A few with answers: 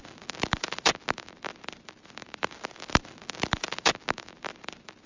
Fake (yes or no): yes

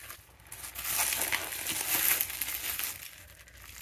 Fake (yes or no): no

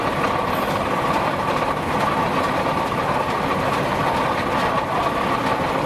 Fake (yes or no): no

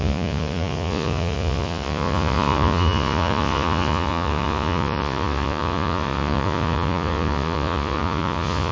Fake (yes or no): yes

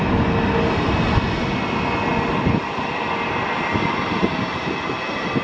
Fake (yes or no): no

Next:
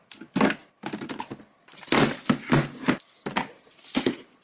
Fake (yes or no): no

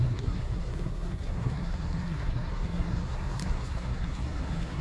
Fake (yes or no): yes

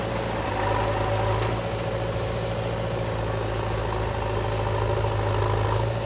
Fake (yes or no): no